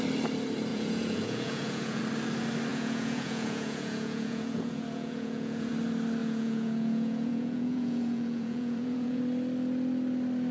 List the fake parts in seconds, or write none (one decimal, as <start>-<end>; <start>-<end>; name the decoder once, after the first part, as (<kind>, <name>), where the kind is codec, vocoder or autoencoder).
0.7-2.0 (vocoder, Vocos); 2.7-5.7; 6.2-9.2